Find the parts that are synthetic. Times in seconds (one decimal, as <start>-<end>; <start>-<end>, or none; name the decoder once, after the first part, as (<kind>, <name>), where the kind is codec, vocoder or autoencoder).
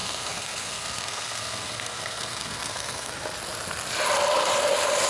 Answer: 0.0-3.1 (codec, SNAC)